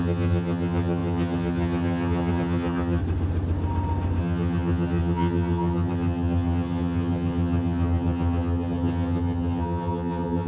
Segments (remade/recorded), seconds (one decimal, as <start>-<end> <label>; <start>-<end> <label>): 0.0-3.0 remade; 3.0-4.2 recorded; 4.2-10.5 remade